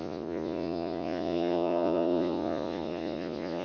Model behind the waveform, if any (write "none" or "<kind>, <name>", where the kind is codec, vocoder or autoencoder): vocoder, Vocos